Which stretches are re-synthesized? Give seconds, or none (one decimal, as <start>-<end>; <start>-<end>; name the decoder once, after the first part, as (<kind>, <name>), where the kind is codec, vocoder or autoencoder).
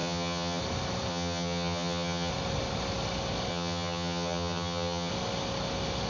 0.0-0.6 (vocoder, HiFi-GAN); 1.1-2.3; 3.5-5.1